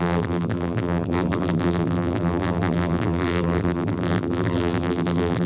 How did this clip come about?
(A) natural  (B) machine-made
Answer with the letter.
B